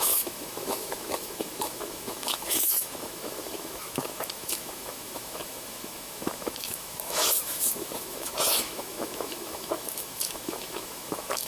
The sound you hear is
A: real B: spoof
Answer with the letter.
B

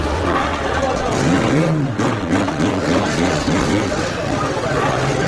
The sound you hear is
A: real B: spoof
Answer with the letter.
B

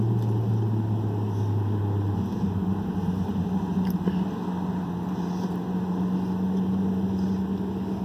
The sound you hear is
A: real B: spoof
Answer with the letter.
A